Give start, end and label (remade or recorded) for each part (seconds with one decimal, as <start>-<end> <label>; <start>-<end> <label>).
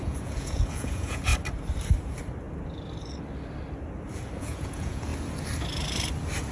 0.0-1.3 remade; 1.3-4.4 recorded; 4.4-5.1 remade; 5.1-6.5 recorded